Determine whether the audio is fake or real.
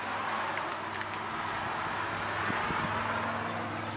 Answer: real